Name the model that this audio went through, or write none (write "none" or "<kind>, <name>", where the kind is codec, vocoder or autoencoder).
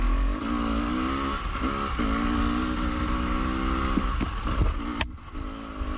none